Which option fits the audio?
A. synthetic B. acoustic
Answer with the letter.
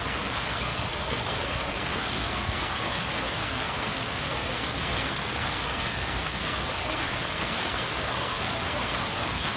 A